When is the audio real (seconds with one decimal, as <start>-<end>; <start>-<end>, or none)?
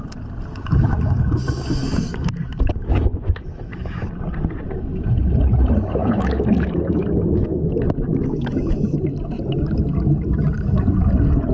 0.0-0.5; 4.1-6.0; 7.7-8.1; 9.0-11.5